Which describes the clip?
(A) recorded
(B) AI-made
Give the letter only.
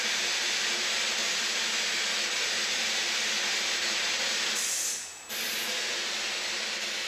A